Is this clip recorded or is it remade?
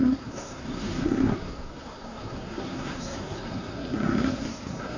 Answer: remade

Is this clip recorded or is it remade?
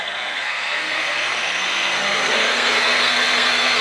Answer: remade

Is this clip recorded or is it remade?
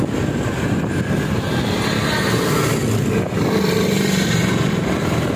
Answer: recorded